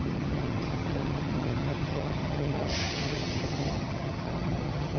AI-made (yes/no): yes